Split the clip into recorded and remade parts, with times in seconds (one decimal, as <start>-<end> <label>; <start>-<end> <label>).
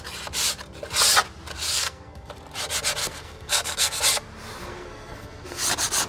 0.0-1.7 recorded; 1.7-2.3 remade; 2.3-3.0 recorded; 3.0-4.0 remade; 4.0-4.6 recorded; 4.6-5.6 remade; 5.6-6.1 recorded